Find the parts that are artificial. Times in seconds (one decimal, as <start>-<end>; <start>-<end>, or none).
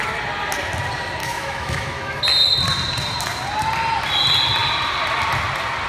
1.2-2.2